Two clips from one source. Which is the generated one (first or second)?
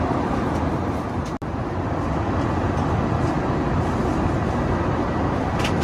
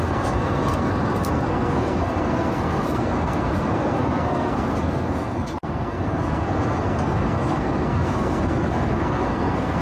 second